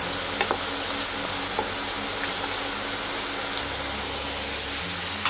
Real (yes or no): yes